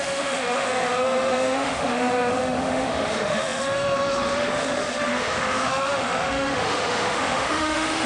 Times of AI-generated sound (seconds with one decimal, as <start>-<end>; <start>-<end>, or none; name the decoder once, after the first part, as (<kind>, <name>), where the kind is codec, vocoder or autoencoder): 0.0-8.1 (autoencoder, DAC-VAE)